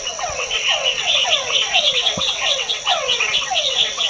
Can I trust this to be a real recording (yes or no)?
no